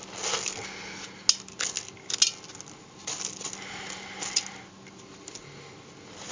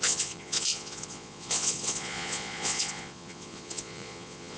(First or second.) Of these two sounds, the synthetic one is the second